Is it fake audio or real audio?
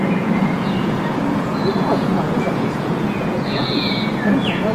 fake